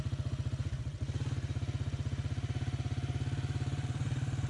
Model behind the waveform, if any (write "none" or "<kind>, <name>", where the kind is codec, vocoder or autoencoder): vocoder, BigVGAN v2